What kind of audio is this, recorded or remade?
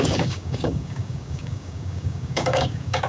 remade